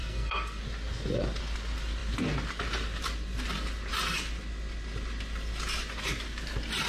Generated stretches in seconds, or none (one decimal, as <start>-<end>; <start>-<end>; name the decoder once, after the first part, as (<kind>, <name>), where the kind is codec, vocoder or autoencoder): 0.0-0.6 (codec, SNAC)